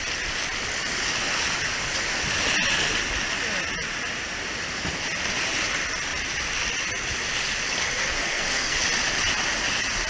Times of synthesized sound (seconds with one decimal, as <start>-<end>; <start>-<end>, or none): 8.0-8.8